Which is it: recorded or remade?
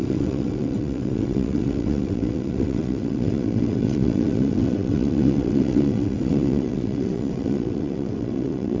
remade